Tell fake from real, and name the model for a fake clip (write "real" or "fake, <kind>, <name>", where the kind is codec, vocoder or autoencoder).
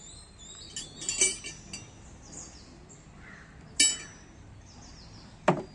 real